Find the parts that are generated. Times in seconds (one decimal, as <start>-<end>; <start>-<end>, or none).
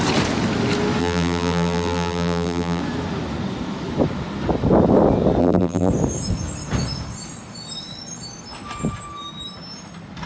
1.0-2.8; 5.4-5.9